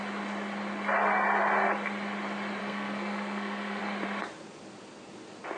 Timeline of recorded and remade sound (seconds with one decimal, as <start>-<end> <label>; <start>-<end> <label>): 0.0-2.6 recorded; 2.6-3.8 remade; 3.8-5.6 recorded